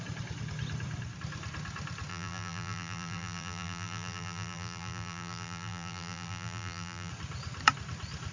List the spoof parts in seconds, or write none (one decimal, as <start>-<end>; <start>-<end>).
2.1-7.1